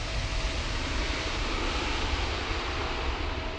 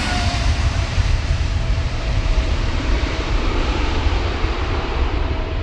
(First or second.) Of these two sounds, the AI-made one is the second